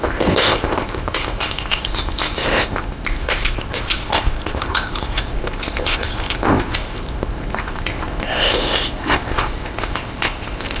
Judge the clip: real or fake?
fake